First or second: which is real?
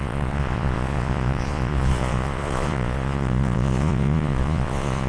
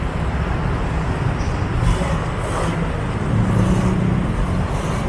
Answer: second